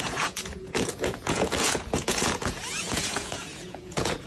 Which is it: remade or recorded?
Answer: remade